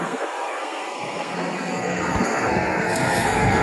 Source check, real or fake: fake